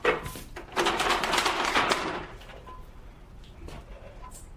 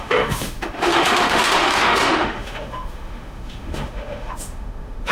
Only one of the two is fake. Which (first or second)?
second